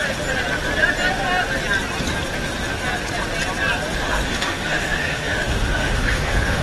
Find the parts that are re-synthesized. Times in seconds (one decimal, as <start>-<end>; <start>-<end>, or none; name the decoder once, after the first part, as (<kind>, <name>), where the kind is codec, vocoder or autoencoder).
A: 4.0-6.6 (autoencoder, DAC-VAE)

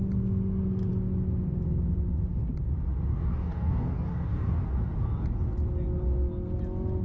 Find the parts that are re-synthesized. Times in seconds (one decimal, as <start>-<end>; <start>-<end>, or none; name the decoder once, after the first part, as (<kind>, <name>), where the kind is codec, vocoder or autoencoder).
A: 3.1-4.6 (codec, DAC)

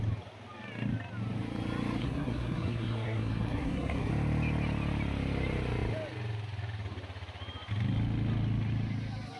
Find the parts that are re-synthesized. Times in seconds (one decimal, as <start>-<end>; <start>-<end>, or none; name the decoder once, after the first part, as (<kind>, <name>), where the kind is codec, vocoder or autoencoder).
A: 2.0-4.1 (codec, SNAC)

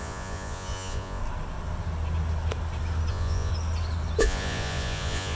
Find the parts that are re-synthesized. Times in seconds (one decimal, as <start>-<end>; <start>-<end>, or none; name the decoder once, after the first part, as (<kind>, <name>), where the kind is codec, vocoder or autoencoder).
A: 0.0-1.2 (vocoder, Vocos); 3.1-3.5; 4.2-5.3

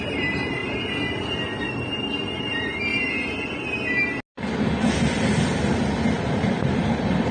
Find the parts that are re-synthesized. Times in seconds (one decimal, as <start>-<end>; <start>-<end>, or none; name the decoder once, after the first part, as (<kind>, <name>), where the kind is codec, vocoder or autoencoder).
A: 0.0-0.6 (vocoder, BigVGAN v2); 2.4-2.9; 6.3-7.3